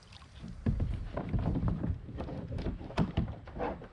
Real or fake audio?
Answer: fake